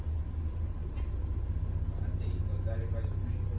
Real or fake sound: real